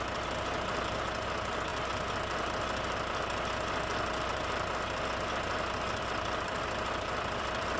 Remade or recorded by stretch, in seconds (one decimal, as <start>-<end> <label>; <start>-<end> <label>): 0.0-1.7 remade; 1.7-6.0 recorded; 6.0-7.8 remade